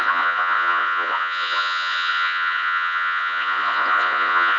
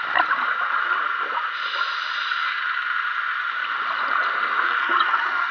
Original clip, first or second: second